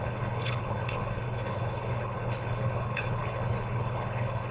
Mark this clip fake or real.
fake